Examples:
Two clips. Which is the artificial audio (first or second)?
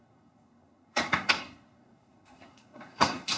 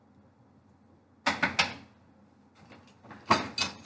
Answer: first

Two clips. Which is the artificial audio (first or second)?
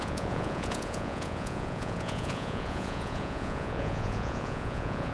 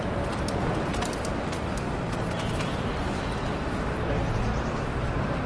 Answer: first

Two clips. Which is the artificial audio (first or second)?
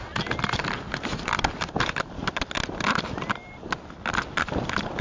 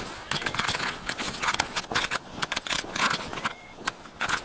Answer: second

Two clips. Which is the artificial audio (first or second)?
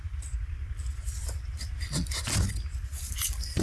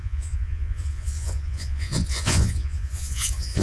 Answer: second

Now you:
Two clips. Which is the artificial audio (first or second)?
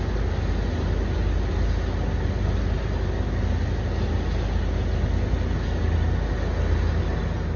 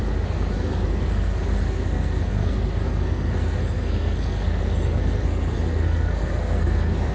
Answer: second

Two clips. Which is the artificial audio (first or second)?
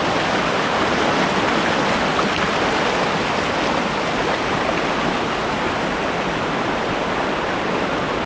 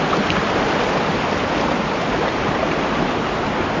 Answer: second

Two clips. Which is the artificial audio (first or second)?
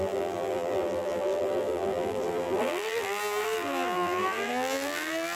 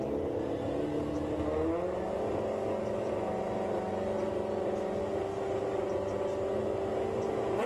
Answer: first